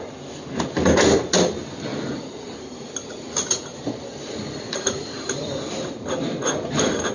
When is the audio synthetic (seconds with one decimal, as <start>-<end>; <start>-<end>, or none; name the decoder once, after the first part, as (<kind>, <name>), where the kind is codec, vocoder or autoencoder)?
1.9-6.1 (vocoder, BigVGAN v2)